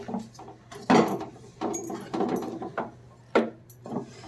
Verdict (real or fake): real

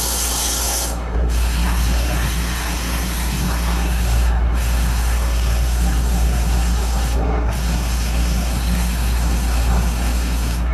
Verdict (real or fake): fake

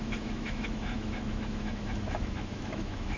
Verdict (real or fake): fake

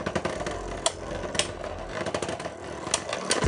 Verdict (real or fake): real